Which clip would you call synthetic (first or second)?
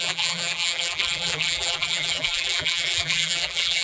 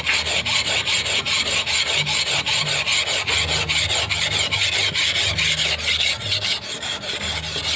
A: first